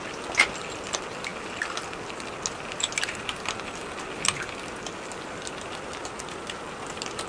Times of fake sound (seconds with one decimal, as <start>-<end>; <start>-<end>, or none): none